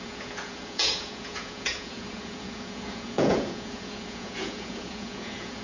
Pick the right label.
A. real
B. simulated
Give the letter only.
B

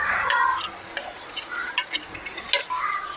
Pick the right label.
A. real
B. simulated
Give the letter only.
A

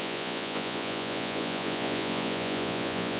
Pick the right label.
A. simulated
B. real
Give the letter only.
A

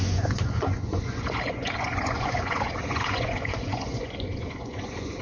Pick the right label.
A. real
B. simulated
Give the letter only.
B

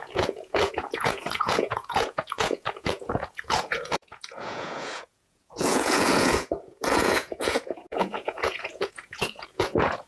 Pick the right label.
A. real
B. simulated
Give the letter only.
B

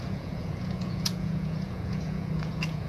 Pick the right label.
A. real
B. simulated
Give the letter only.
B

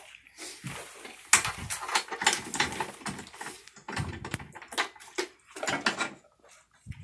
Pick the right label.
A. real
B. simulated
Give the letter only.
A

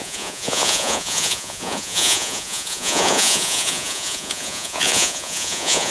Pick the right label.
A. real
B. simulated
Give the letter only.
B